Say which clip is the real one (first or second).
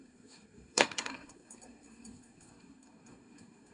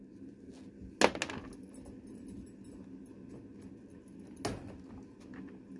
second